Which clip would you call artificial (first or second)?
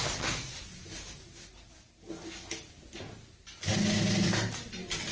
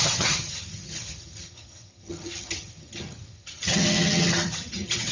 second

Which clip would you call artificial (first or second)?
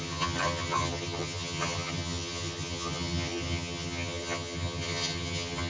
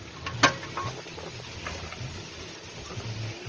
first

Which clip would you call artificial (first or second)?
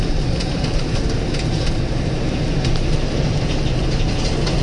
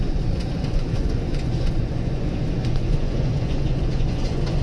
second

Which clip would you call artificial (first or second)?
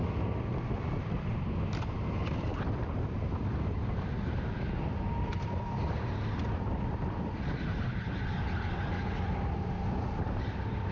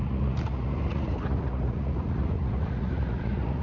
second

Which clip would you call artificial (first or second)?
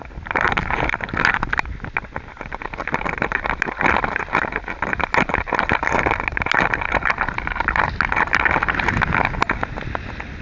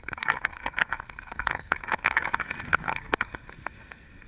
second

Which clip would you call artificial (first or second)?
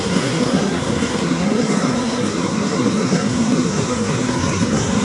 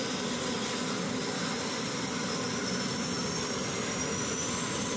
first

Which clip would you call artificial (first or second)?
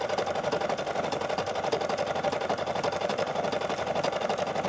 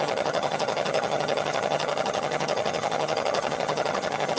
second